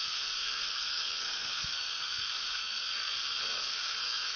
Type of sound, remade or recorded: remade